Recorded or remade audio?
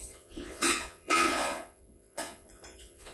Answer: remade